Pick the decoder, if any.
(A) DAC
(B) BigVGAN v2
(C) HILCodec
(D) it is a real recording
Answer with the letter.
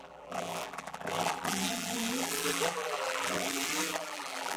B